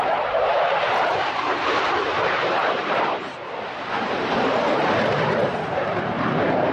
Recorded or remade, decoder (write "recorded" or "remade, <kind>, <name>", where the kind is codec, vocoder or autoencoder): remade, vocoder, BigVGAN v2